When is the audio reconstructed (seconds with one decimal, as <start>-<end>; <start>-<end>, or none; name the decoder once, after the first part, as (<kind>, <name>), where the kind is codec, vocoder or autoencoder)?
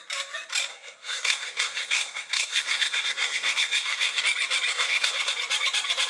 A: 0.7-4.2 (codec, SNAC); 4.7-5.3